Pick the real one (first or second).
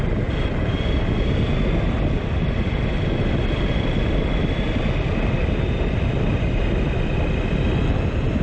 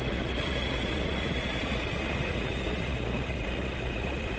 first